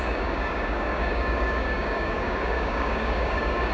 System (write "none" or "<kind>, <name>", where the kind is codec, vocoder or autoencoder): codec, DAC